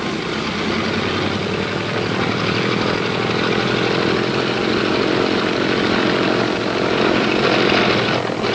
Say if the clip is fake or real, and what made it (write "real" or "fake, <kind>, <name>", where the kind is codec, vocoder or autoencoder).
real